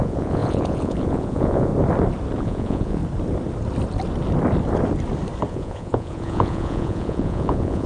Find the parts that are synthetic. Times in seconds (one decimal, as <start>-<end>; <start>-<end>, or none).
0.0-1.7; 2.4-3.0; 5.5-7.9